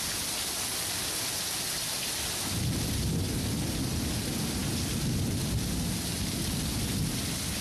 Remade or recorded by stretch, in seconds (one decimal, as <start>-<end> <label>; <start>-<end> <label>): 0.0-7.6 recorded